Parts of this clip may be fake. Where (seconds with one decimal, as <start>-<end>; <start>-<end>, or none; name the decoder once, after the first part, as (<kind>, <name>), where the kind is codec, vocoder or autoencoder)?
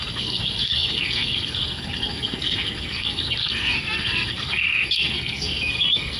0.0-6.2 (codec, SNAC)